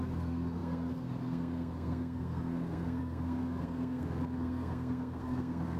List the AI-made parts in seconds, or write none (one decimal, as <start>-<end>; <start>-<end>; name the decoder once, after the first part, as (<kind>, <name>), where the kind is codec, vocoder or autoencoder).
0.0-5.8 (codec, SNAC)